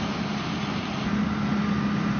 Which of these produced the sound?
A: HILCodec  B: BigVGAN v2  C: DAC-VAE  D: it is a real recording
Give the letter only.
D